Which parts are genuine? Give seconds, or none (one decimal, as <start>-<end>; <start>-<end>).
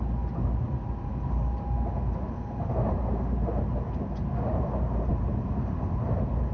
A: 0.0-5.1; 6.0-6.5